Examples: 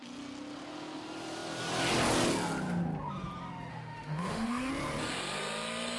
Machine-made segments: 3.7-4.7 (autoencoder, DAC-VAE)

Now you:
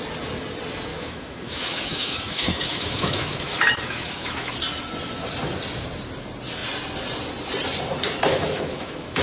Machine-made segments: 0.9-4.5 (autoencoder, DAC-VAE); 8.3-9.2

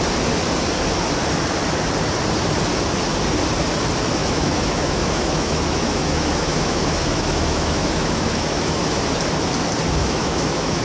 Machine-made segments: 4.2-9.0 (autoencoder, DAC-VAE); 10.0-10.8

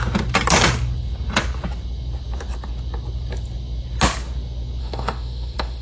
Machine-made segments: 4.8-5.8 (autoencoder, DAC-VAE)